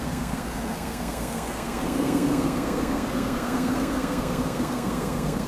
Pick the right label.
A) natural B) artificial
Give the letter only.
B